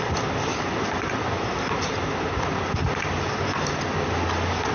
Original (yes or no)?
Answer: yes